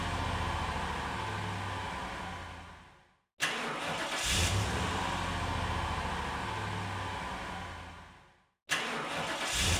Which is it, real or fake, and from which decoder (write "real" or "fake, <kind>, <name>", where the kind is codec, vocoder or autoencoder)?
real